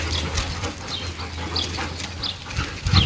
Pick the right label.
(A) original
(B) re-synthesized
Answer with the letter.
A